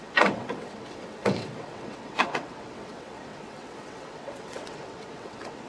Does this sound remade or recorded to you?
remade